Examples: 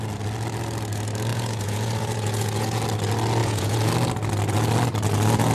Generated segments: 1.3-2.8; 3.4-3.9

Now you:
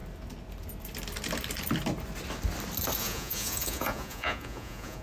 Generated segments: 3.0-5.0

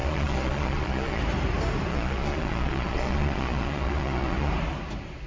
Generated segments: 0.0-1.2; 1.9-4.5

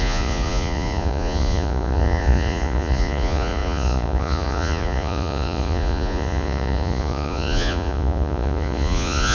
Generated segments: 0.0-9.3

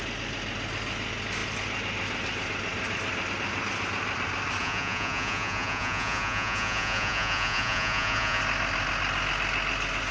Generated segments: 4.6-8.4

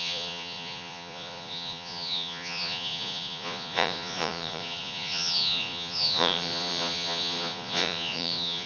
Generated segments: 0.0-8.7

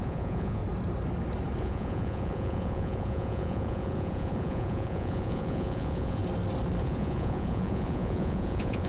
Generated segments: 0.0-0.6; 1.6-6.2; 6.8-8.9